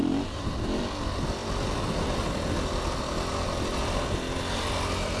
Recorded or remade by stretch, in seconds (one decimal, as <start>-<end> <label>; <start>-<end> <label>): 0.0-0.8 remade; 0.8-5.2 recorded